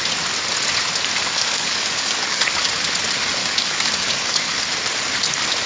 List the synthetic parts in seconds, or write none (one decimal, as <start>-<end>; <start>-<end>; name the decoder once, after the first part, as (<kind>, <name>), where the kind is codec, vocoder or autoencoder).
1.2-2.7 (codec, DAC); 3.4-4.6